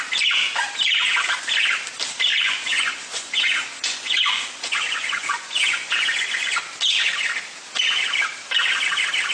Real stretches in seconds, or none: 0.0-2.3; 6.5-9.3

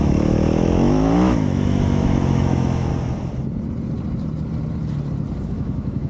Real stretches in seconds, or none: 2.9-5.4

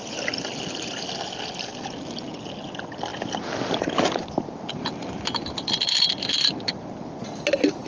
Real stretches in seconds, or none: 0.0-7.9

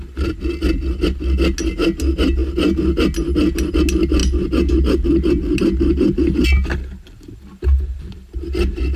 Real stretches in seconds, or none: 0.0-9.0

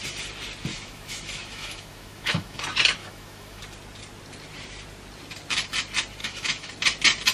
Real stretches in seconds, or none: 0.0-0.7; 2.6-3.0; 3.6-6.2; 6.7-7.3

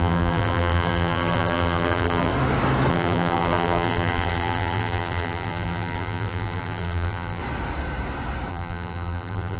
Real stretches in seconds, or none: 2.3-2.9; 7.4-8.5